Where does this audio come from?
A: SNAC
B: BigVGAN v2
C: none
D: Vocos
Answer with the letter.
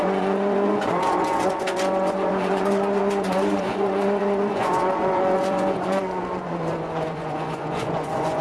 D